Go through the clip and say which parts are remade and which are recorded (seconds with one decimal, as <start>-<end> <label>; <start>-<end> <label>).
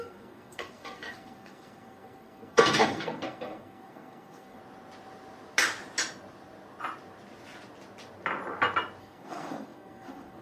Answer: 0.0-4.6 remade; 4.6-9.0 recorded; 9.0-10.4 remade